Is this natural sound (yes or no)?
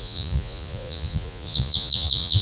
no